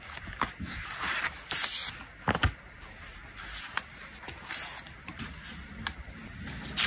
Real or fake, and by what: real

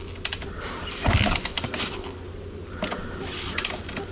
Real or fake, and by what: real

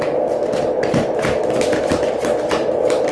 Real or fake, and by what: real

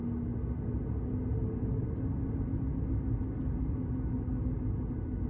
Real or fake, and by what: real